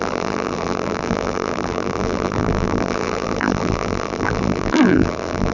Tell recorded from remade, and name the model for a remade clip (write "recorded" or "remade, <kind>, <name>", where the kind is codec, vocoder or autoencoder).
remade, vocoder, BigVGAN v2